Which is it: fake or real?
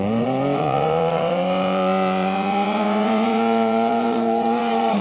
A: fake